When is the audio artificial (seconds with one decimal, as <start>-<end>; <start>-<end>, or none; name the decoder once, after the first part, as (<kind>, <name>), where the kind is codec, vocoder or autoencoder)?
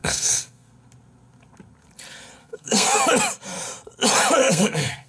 0.0-0.7 (codec, SNAC); 2.4-3.0; 4.4-5.1